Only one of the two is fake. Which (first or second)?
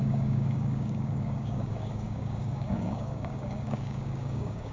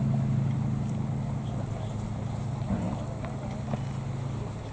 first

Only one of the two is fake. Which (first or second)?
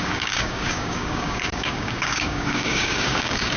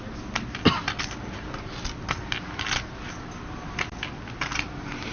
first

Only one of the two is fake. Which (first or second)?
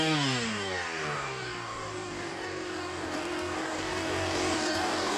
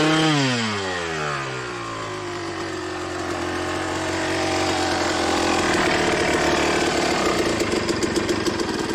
first